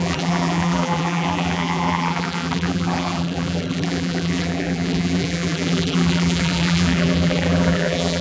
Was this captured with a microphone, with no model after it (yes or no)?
no